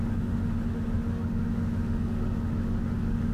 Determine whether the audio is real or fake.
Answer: fake